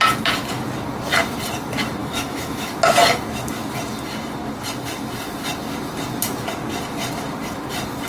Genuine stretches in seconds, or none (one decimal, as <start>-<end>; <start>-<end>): 0.0-2.0; 2.7-8.1